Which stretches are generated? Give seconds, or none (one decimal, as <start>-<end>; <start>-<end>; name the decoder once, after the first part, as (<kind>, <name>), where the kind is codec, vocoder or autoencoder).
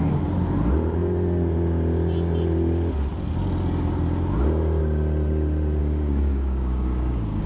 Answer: 5.8-7.5 (codec, DAC)